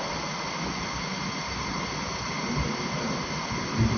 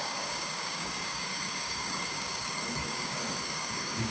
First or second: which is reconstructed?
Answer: second